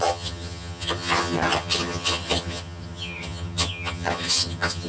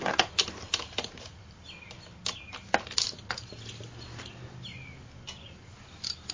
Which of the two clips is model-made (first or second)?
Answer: first